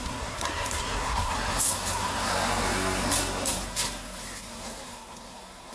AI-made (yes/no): yes